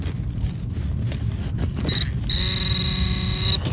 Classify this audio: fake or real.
real